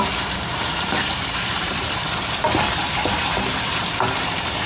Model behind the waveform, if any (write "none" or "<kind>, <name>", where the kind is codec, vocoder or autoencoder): vocoder, BigVGAN v2